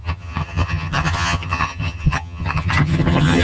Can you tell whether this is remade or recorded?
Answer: remade